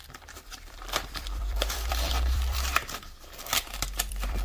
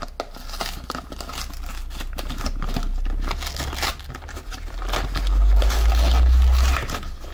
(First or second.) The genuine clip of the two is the second